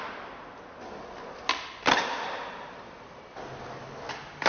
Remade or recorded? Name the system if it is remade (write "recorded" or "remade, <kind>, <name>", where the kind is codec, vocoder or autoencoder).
recorded